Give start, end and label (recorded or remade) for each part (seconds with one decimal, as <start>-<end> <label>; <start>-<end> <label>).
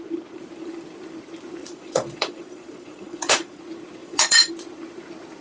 0.0-1.6 recorded; 1.6-3.6 remade; 3.6-4.0 recorded; 4.0-4.5 remade; 4.5-5.4 recorded